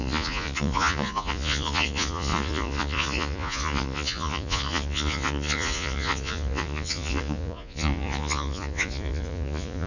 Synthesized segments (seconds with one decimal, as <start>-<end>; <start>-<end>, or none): 0.0-9.9